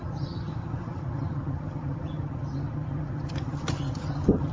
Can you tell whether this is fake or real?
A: fake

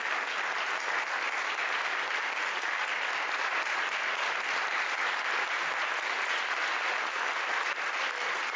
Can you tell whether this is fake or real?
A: real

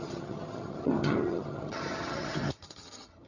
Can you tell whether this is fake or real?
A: fake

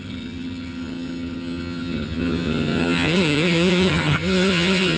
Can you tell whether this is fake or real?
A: fake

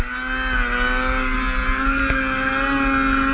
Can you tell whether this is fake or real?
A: real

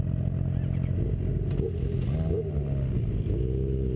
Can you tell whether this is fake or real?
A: real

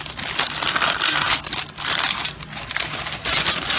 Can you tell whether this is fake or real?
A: real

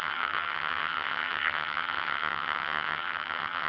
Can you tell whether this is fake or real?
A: fake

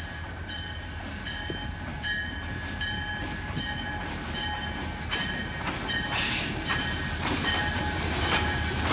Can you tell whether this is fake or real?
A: real